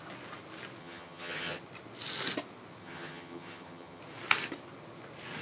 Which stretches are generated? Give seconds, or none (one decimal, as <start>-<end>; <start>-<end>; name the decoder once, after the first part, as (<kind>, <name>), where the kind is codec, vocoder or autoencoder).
0.8-1.6 (vocoder, HiFi-GAN); 2.8-4.0